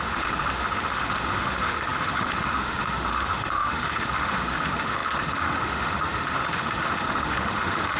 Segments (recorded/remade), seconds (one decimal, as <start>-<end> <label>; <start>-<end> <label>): 0.0-8.0 remade